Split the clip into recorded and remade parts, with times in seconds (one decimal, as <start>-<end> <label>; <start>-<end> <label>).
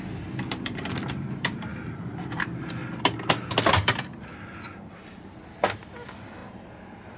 0.0-2.8 remade; 2.8-3.6 recorded; 3.6-4.3 remade; 4.3-4.9 recorded; 4.9-6.4 remade; 6.4-7.2 recorded